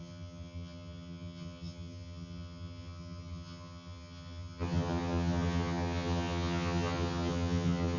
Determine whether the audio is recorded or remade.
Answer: remade